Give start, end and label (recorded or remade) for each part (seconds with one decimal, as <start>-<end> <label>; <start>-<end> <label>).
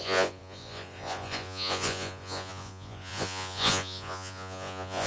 0.0-5.1 remade